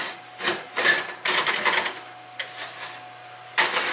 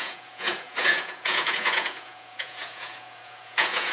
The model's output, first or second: second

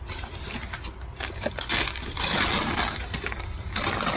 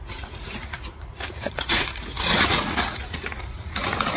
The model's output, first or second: second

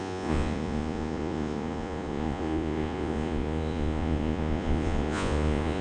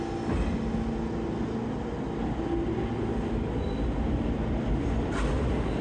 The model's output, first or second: first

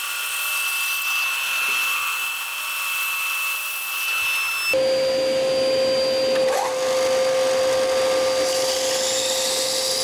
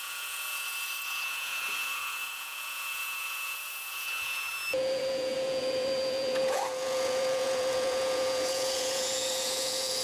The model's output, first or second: second